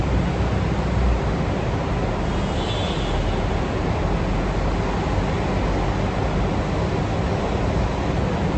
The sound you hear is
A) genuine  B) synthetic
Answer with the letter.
A